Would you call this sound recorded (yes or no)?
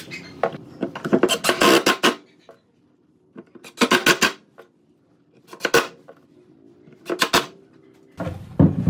yes